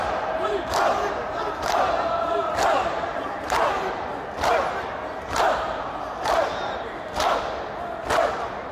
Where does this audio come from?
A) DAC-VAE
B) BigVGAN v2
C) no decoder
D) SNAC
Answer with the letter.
C